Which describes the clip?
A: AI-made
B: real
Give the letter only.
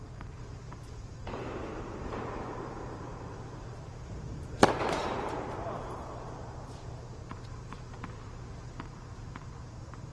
A